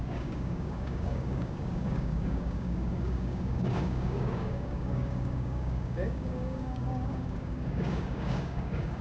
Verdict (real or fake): fake